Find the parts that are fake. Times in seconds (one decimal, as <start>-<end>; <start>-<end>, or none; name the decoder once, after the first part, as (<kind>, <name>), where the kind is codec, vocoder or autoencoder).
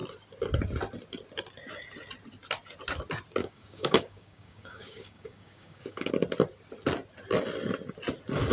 3.4-6.1 (codec, DAC)